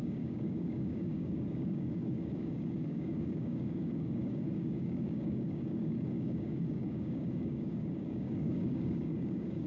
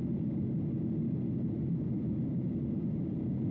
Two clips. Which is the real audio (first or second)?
second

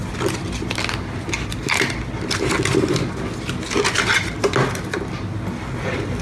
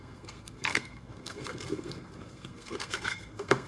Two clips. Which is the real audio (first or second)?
first